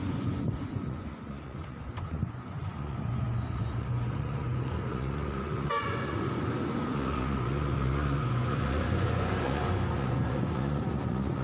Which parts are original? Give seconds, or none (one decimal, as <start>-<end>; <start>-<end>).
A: none